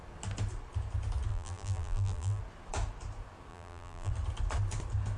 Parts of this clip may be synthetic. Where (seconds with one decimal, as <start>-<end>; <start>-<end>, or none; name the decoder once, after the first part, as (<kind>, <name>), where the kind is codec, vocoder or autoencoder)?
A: 1.3-2.4 (vocoder, BigVGAN v2); 3.5-4.1